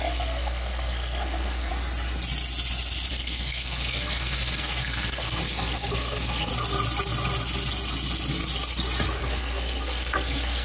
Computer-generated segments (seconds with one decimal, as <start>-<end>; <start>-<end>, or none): 0.0-1.7; 3.1-6.5; 9.2-10.6